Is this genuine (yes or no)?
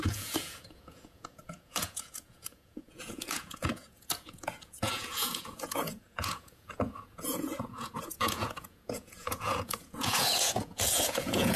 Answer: no